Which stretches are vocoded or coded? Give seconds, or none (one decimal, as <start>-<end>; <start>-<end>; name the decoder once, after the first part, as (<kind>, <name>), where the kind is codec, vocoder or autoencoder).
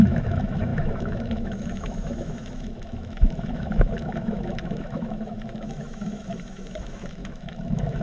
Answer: 0.0-8.0 (autoencoder, DAC-VAE)